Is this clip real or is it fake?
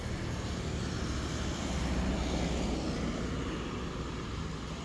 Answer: real